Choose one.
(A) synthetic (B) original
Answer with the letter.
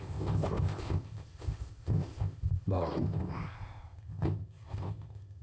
A